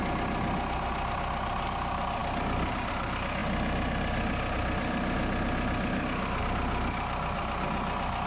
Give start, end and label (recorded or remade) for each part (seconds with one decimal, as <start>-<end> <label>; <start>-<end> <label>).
0.0-8.3 recorded